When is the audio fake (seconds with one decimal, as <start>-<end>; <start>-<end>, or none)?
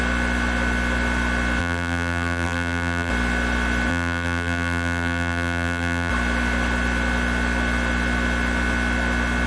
1.6-3.1; 3.9-6.1